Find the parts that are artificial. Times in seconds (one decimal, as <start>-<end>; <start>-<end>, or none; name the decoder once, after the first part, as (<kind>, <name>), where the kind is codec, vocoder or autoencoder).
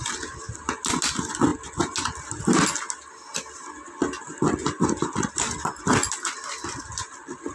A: none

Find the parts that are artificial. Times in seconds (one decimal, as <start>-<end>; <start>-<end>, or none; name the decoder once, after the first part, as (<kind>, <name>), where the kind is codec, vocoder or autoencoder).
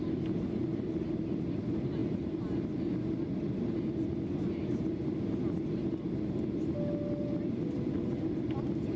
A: none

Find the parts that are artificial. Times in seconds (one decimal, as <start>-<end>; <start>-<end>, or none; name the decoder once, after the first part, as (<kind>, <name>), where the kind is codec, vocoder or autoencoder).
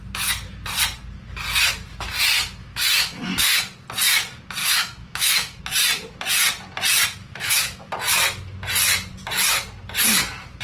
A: 2.6-3.6 (autoencoder, DAC-VAE); 4.6-5.6; 7.2-7.9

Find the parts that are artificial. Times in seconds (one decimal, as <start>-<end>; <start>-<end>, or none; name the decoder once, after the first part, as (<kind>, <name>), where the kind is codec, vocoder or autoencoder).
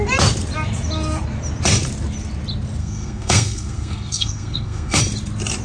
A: 2.8-5.0 (codec, SNAC)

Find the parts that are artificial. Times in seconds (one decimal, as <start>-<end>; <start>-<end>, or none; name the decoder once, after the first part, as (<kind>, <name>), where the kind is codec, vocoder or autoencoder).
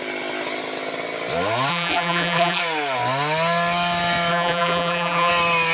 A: 1.7-2.6 (vocoder, BigVGAN v2); 4.3-5.3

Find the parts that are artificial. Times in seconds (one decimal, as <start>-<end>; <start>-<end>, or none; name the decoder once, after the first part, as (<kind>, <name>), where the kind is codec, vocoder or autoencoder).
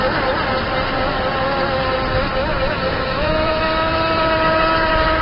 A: 2.5-3.6 (vocoder, Vocos)